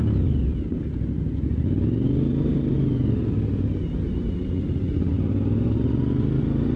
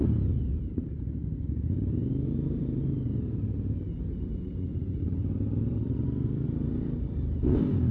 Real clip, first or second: first